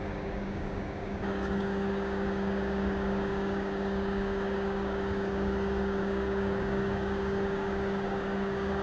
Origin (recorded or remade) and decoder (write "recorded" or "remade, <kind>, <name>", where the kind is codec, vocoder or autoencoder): remade, codec, DAC